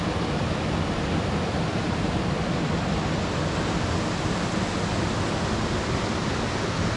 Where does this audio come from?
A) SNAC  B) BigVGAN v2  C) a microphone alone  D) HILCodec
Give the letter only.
C